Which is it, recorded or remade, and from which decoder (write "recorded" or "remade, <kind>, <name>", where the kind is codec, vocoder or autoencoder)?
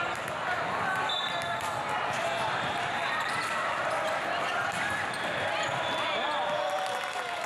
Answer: remade, vocoder, BigVGAN v2